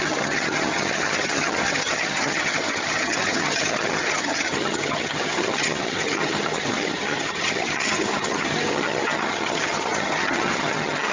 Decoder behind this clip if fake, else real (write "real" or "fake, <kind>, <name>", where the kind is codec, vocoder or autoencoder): fake, vocoder, HiFi-GAN